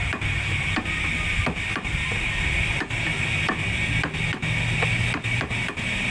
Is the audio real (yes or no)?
yes